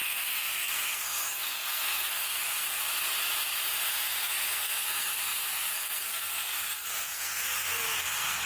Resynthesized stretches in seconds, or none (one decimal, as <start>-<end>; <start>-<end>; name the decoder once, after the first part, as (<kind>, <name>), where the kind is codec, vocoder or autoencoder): 0.0-2.9 (codec, SNAC); 3.9-8.5

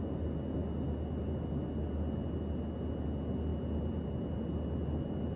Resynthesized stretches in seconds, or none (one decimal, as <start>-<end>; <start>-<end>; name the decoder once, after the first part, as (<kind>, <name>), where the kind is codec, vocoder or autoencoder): none

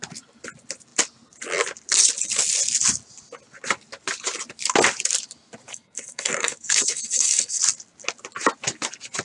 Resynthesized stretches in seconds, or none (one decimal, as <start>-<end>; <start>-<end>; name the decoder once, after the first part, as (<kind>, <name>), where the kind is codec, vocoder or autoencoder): 5.7-7.6 (codec, SNAC)

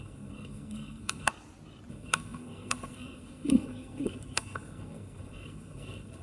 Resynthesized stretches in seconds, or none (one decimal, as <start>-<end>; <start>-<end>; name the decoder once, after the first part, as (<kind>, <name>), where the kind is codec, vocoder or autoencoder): 0.0-1.3 (codec, SNAC); 1.9-6.2